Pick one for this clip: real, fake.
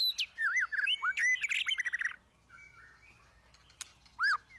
real